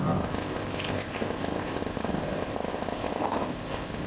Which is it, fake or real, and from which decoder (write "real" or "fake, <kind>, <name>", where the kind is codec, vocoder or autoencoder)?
fake, codec, ZipCodec